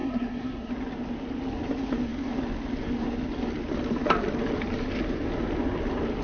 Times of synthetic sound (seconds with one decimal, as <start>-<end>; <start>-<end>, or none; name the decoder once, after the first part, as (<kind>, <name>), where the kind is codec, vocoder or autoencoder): 0.0-0.7 (codec, SNAC)